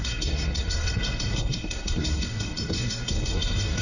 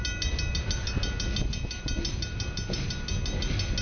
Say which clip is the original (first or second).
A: second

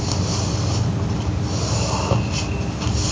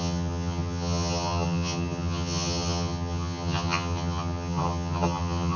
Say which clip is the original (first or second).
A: first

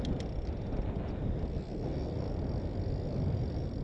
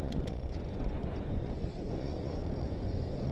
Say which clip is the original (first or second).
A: first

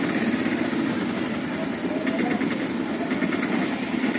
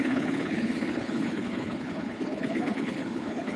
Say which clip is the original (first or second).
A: first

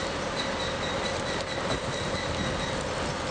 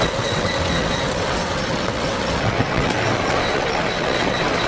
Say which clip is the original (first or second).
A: first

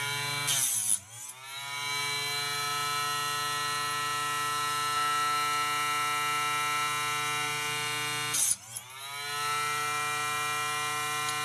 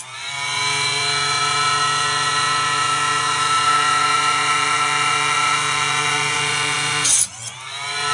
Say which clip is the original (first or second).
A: first